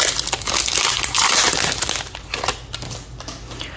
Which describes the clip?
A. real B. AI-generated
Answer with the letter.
A